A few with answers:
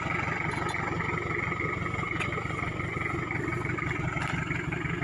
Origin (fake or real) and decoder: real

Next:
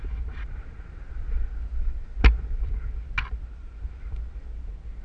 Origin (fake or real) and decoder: real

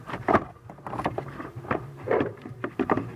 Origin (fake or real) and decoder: fake, vocoder, BigVGAN v2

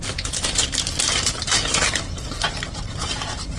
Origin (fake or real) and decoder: fake, vocoder, BigVGAN v2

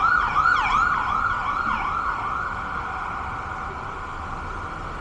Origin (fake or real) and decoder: real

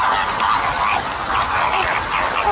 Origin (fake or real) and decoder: real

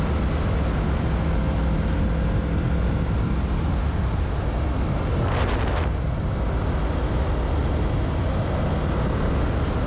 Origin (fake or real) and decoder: real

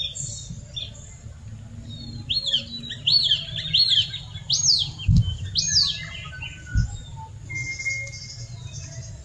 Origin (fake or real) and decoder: real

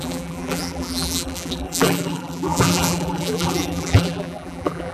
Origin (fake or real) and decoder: fake, vocoder, BigVGAN v2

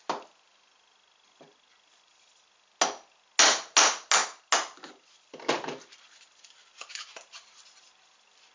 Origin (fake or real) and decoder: real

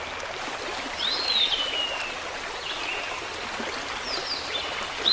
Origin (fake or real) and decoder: real